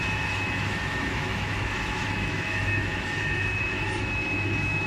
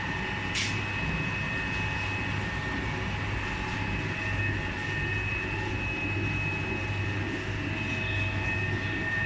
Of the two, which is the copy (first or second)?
first